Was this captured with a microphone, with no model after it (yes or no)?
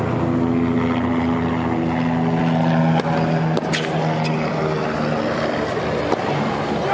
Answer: yes